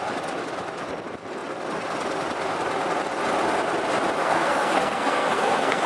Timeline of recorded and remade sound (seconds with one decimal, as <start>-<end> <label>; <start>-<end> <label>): 0.0-4.2 recorded; 4.2-5.9 remade